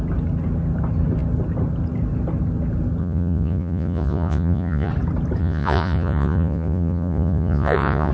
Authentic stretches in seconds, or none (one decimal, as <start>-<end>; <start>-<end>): 0.0-3.0; 4.9-5.4